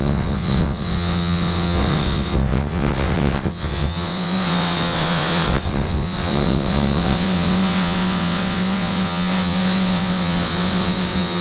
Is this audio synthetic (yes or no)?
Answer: yes